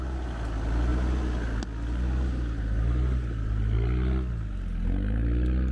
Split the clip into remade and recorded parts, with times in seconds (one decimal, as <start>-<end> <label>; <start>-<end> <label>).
0.0-5.7 recorded